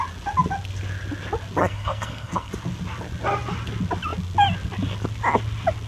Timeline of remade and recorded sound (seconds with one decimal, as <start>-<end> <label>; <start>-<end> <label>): 0.0-1.6 recorded; 1.6-2.5 remade; 2.5-5.9 recorded